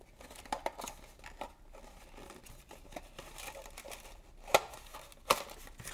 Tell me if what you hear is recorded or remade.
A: recorded